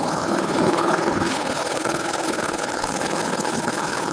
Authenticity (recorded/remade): remade